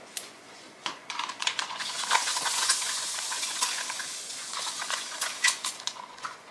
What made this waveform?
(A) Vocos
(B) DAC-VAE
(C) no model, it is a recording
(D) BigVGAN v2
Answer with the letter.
A